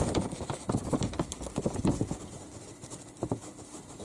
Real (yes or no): yes